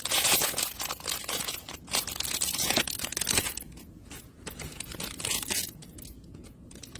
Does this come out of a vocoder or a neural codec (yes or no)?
yes